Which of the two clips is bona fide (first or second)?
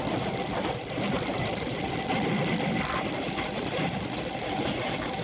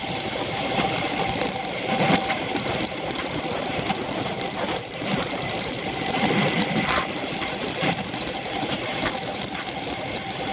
first